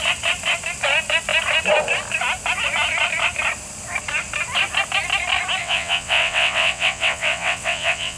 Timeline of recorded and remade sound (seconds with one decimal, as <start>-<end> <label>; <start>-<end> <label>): 0.0-5.6 recorded; 5.6-8.2 remade